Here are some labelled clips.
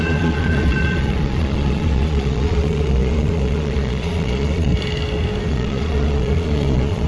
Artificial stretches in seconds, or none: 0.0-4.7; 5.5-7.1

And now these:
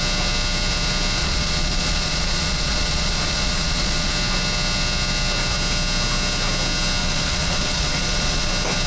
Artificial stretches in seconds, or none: 1.2-4.1; 7.0-8.5

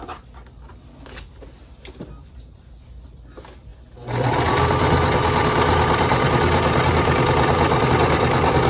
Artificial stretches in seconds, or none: none

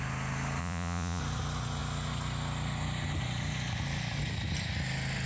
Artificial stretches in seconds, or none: 0.6-1.2